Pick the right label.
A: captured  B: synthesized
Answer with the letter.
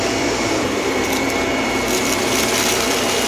B